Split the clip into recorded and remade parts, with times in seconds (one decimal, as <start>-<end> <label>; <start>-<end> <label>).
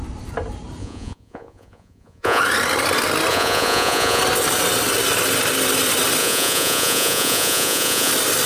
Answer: 0.0-0.8 recorded; 0.8-2.4 remade; 2.4-3.3 recorded; 3.3-4.2 remade; 4.2-6.2 recorded; 6.2-8.1 remade; 8.1-8.5 recorded